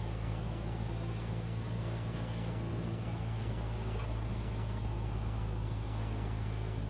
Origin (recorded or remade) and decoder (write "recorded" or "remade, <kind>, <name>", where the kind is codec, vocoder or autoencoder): remade, codec, SNAC